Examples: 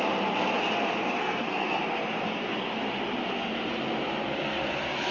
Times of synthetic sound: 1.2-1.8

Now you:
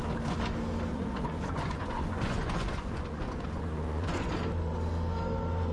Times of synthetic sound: 0.9-4.3